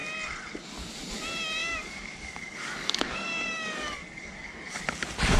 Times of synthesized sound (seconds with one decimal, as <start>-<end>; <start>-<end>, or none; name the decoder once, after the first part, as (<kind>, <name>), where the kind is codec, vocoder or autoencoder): 1.6-4.8 (codec, DAC)